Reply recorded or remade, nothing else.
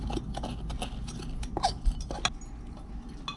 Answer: recorded